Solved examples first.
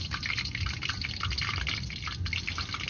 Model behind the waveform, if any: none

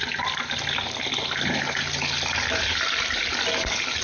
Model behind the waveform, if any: none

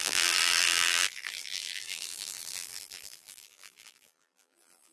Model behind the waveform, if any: vocoder, BigVGAN v2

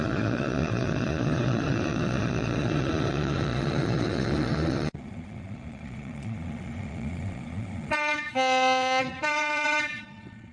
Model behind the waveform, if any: vocoder, Vocos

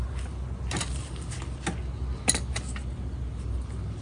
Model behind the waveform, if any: none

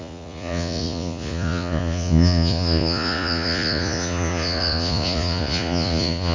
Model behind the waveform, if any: vocoder, Vocos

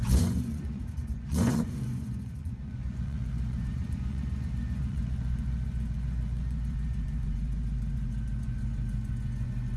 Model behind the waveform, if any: vocoder, Vocos